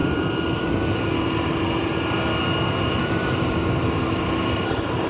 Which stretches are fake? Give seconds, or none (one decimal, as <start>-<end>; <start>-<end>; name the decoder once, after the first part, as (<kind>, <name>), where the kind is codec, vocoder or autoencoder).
none